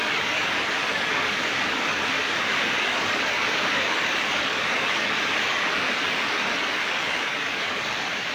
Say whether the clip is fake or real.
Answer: fake